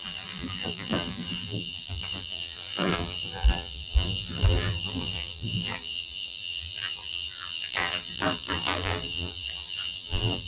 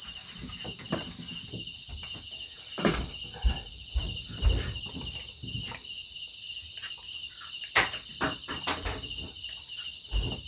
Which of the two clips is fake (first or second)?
first